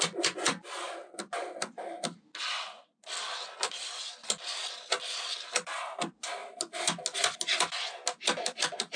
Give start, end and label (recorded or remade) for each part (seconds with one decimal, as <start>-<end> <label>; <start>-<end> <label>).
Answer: 0.0-9.0 recorded

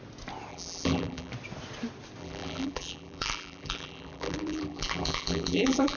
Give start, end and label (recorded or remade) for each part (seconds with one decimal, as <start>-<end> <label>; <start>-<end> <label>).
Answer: 0.0-0.5 recorded; 0.5-1.3 remade; 1.3-2.2 recorded; 2.2-6.0 remade

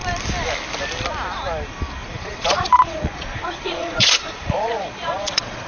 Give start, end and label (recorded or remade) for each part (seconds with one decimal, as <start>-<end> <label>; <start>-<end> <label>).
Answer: 0.0-2.0 recorded; 2.0-5.7 remade

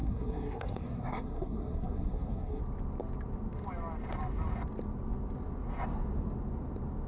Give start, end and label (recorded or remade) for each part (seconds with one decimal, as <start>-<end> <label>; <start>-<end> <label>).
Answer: 0.0-2.6 remade; 2.6-7.1 recorded

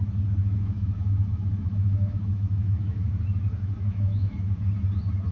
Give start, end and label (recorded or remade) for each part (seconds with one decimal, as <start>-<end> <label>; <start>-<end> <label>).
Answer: 0.0-0.4 recorded; 0.4-3.1 remade; 3.1-3.5 recorded; 3.5-4.6 remade; 4.6-5.3 recorded

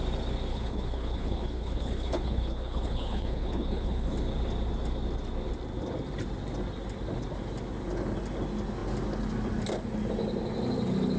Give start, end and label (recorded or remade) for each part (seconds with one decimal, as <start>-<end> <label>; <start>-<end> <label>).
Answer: 0.0-0.5 recorded; 0.5-4.1 remade; 4.1-11.2 recorded

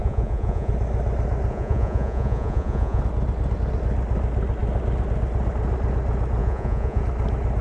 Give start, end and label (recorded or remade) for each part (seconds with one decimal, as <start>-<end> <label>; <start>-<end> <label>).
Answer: 0.0-0.7 remade; 0.7-1.5 recorded; 1.5-3.0 remade; 3.0-6.4 recorded; 6.4-7.0 remade; 7.0-7.6 recorded

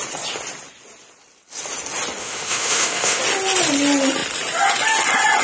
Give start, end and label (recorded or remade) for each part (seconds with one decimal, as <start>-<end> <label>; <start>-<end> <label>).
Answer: 0.0-2.2 recorded; 2.2-3.2 remade; 3.2-5.4 recorded